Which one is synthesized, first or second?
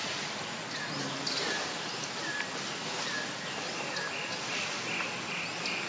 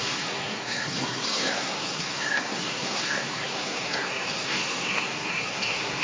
second